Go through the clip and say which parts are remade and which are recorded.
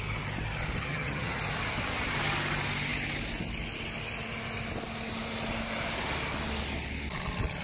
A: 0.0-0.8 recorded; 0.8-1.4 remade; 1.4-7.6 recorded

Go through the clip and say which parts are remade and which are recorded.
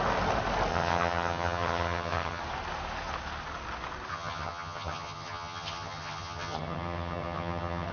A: 0.0-0.7 recorded; 0.7-2.4 remade; 2.4-4.1 recorded; 4.1-7.9 remade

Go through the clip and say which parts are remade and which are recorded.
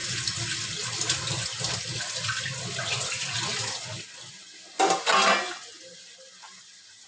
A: 0.0-7.1 recorded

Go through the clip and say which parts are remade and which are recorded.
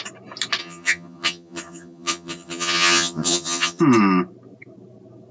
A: 0.0-0.6 recorded; 0.6-3.8 remade; 3.8-5.3 recorded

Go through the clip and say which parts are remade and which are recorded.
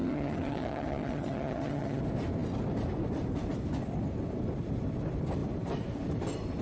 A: 0.0-2.0 remade; 2.0-6.6 recorded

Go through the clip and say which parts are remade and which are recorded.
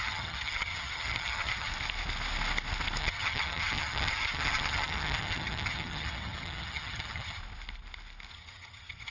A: 0.0-1.7 remade; 1.7-3.0 recorded; 3.0-7.4 remade; 7.4-8.3 recorded; 8.3-9.1 remade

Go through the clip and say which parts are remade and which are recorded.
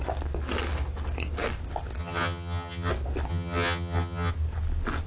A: 0.0-2.0 recorded; 2.0-2.9 remade; 2.9-3.3 recorded; 3.3-4.3 remade; 4.3-5.1 recorded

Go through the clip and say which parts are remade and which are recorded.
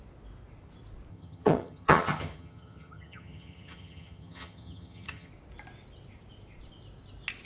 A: 0.0-1.1 recorded; 1.1-5.3 remade; 5.3-7.5 recorded